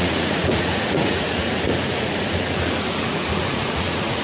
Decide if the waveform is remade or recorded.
remade